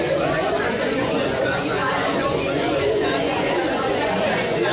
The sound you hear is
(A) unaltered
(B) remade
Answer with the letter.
B